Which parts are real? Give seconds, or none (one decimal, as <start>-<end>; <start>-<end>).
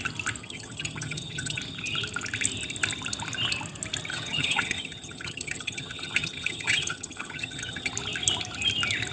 0.0-0.4; 1.6-4.1; 7.9-9.1